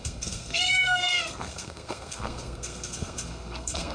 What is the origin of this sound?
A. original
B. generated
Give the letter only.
B